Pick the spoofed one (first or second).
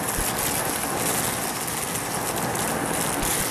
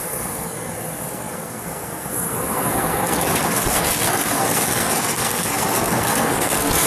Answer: second